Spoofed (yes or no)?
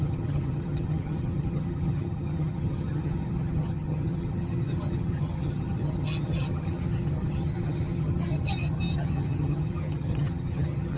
yes